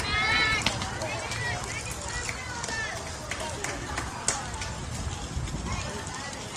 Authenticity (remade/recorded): recorded